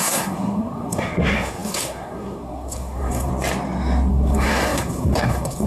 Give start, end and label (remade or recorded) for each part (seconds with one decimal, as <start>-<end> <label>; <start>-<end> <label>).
0.0-3.3 remade; 3.3-4.1 recorded; 4.1-5.7 remade